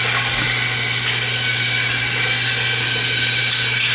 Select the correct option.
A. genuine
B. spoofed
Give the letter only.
A